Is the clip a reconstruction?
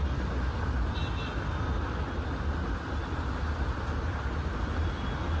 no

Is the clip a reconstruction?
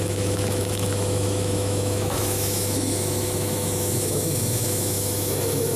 yes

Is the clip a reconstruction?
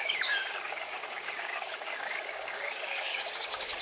yes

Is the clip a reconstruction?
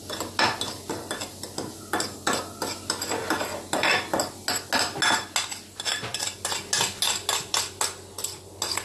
no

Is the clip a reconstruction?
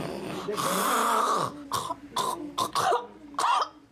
no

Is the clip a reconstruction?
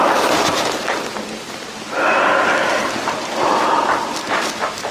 yes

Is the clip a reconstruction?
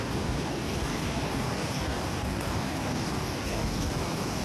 yes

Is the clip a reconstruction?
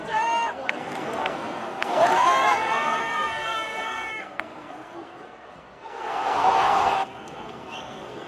yes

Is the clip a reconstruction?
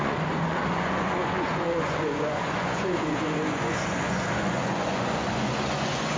yes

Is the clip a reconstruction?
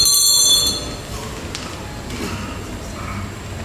no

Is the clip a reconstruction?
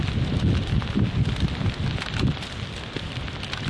no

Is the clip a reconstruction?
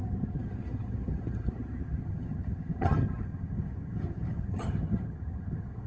yes